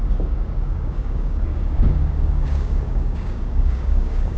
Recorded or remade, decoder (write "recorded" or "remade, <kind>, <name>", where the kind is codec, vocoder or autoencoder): remade, codec, DAC